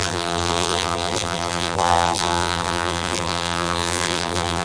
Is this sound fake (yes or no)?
yes